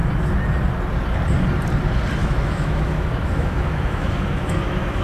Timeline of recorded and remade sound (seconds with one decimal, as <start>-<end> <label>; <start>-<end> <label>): 0.0-2.2 recorded; 2.2-5.0 remade